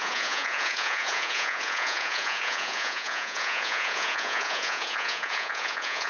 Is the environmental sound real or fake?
fake